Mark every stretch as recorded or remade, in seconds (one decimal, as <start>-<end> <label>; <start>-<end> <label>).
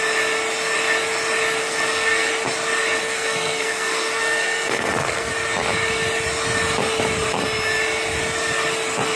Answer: 0.0-1.6 recorded; 1.6-2.3 remade; 2.3-3.0 recorded; 3.0-5.3 remade; 5.3-9.2 recorded